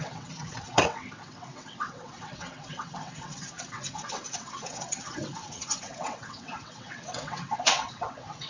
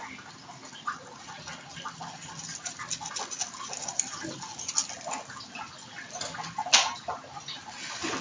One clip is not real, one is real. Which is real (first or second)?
second